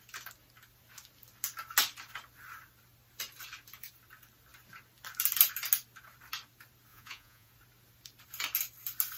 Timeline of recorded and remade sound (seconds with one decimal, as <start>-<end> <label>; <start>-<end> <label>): 0.0-6.9 recorded; 6.9-7.5 remade; 7.5-9.2 recorded